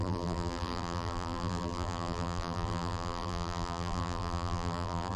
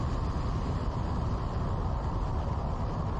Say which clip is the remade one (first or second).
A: first